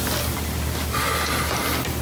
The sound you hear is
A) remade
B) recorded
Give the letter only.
B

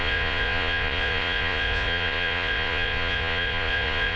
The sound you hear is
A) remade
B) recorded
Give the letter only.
A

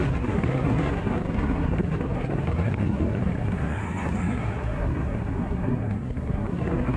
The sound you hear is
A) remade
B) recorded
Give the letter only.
A